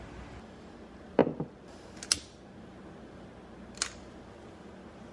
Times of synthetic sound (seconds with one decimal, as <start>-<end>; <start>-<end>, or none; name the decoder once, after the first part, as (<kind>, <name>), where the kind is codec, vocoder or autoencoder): none

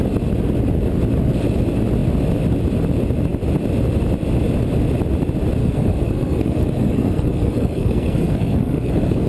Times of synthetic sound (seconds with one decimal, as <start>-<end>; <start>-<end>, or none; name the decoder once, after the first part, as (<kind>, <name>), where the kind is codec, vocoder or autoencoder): 5.6-9.3 (codec, SNAC)

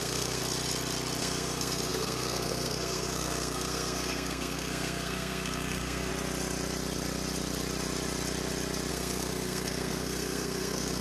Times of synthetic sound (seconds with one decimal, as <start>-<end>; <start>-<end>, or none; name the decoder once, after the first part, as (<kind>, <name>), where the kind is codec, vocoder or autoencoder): 0.0-0.4 (codec, SNAC); 1.2-6.1; 8.9-11.0

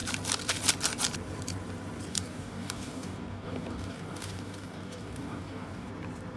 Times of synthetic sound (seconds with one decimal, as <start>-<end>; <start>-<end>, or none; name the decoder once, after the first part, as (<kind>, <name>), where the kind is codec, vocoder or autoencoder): 2.1-5.9 (codec, DAC)

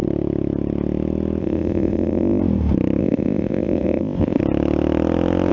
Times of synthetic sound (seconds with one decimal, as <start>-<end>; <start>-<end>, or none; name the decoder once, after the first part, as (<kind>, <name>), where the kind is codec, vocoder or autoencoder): 1.4-2.4 (codec, ZipCodec); 3.0-4.4